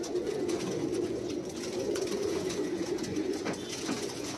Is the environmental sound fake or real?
fake